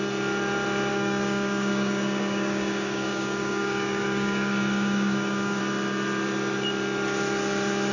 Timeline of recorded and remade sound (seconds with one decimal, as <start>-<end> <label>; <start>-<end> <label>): 0.0-0.9 recorded; 0.9-5.6 remade; 5.6-7.9 recorded